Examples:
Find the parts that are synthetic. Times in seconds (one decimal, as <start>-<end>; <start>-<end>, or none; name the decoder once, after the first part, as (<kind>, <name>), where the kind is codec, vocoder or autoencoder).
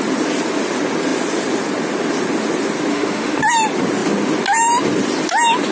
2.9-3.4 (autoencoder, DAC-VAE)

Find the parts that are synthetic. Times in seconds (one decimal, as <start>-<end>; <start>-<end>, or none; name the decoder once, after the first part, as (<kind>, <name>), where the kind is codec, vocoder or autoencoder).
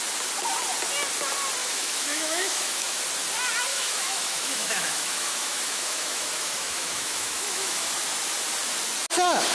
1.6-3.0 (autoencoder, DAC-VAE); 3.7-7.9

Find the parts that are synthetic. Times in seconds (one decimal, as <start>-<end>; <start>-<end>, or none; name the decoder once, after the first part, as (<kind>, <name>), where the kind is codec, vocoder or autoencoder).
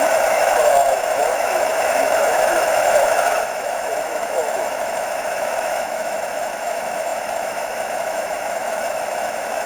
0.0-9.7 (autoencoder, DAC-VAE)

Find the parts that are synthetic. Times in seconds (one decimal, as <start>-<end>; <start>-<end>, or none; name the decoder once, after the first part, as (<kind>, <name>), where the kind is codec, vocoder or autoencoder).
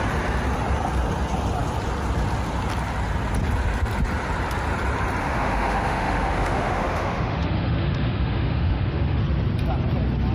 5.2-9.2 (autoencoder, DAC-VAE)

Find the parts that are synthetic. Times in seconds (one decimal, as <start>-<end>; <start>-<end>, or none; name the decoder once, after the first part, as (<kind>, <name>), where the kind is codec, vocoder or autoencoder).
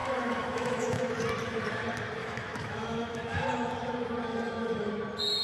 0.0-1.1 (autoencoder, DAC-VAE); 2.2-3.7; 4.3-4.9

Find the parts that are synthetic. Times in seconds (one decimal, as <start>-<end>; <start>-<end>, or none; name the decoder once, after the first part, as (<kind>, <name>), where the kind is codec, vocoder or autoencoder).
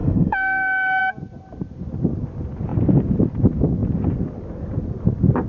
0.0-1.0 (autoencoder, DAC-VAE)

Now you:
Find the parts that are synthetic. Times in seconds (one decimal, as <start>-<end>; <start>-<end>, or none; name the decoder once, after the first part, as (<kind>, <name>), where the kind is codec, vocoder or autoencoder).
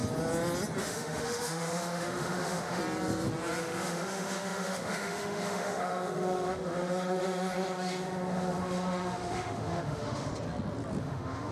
0.8-2.8 (autoencoder, DAC-VAE); 3.6-10.3; 11.0-11.5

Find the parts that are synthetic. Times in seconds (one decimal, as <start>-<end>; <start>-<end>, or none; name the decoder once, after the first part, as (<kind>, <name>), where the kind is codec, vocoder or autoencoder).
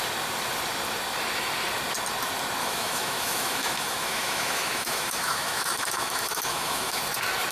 2.6-7.0 (autoencoder, DAC-VAE)